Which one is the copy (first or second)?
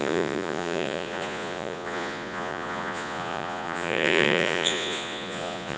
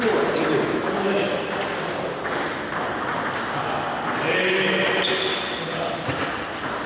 first